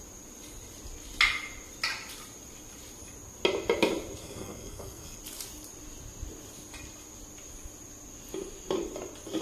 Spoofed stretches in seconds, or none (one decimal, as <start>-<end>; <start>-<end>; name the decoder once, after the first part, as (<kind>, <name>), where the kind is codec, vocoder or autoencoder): 4.2-5.2 (codec, SNAC)